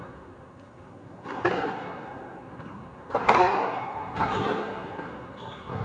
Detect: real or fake fake